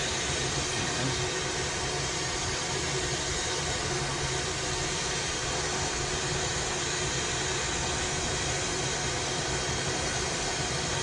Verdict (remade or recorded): recorded